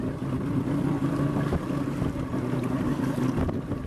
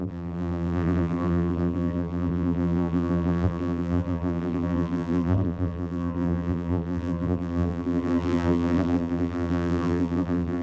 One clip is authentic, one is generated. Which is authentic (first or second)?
first